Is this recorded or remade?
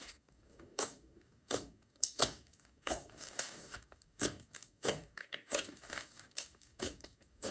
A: remade